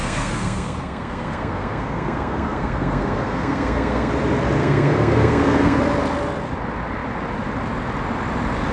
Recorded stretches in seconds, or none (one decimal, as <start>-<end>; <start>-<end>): 4.1-4.6; 5.8-8.7